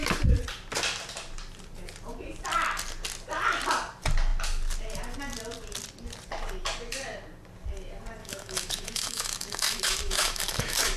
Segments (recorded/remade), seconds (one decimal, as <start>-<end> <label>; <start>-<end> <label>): 0.0-8.2 recorded; 8.2-11.0 remade